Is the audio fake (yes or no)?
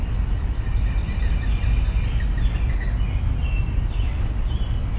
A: no